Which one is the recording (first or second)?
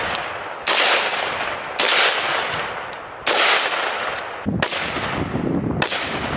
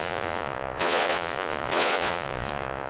first